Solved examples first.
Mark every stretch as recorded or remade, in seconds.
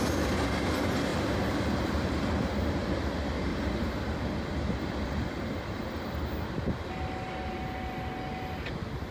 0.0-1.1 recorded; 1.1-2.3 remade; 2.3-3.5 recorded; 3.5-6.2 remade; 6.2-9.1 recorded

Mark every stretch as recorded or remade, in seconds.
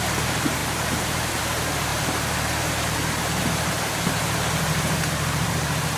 0.0-3.0 remade; 3.0-4.2 recorded; 4.2-6.0 remade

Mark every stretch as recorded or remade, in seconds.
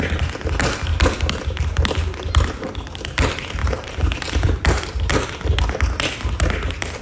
0.0-3.6 recorded; 3.6-5.0 remade; 5.0-7.0 recorded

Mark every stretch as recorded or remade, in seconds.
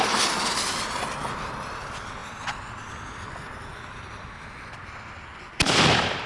0.0-6.3 recorded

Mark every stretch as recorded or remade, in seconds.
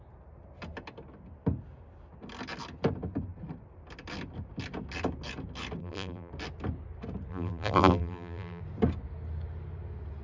0.0-5.8 recorded; 5.8-6.3 remade; 6.3-7.3 recorded; 7.3-8.6 remade; 8.6-10.2 recorded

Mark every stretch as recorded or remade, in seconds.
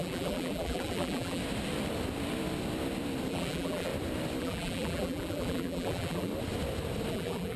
0.0-1.4 remade; 1.4-3.3 recorded; 3.3-3.9 remade; 3.9-4.4 recorded; 4.4-6.3 remade; 6.3-7.1 recorded; 7.1-7.6 remade